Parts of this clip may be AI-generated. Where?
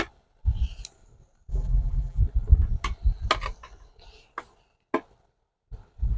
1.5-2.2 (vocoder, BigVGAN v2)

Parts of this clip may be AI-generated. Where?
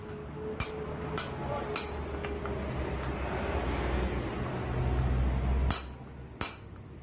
none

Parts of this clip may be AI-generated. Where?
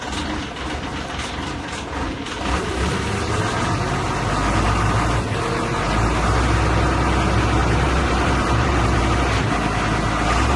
7.6-9.0 (vocoder, BigVGAN v2)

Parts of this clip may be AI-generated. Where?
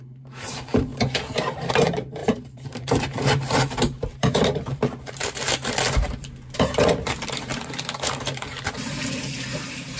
0.0-10.0 (vocoder, BigVGAN v2)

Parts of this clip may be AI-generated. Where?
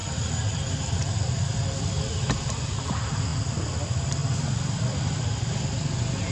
0.0-3.3 (vocoder, BigVGAN v2); 3.8-4.2; 5.1-6.3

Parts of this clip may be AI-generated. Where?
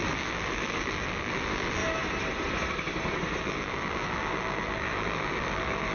0.0-1.8 (vocoder, BigVGAN v2); 3.4-5.9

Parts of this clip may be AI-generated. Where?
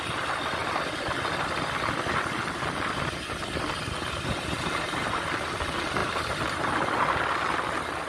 6.0-6.6 (vocoder, BigVGAN v2)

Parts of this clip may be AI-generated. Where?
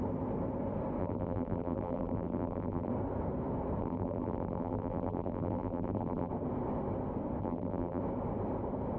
1.0-2.9 (vocoder, BigVGAN v2); 3.8-6.3; 7.4-8.0